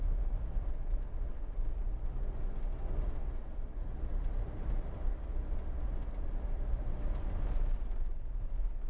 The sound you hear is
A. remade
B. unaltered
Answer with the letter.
B